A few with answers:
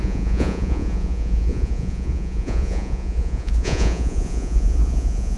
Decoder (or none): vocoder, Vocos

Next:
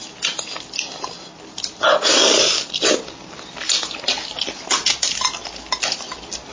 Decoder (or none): none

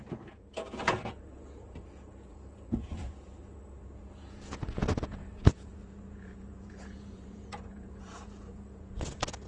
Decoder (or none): vocoder, Vocos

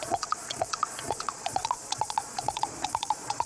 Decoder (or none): vocoder, Vocos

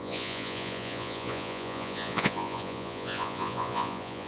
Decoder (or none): vocoder, Vocos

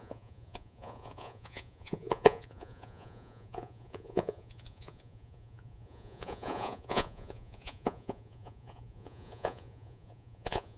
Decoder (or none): vocoder, Vocos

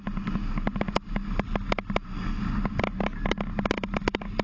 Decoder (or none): none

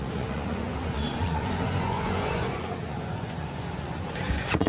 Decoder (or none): vocoder, Vocos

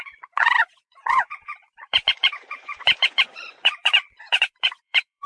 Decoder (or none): vocoder, Vocos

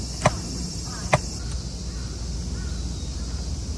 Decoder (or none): none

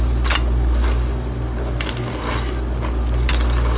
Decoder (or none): none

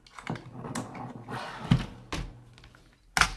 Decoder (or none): none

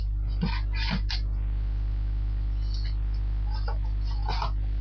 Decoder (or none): none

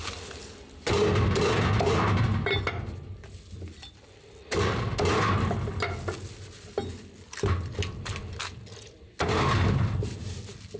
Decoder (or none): none